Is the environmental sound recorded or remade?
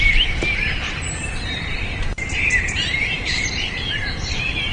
remade